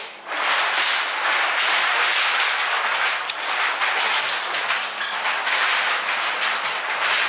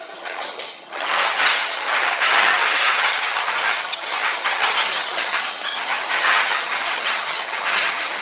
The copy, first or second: second